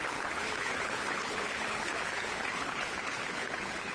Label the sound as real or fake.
fake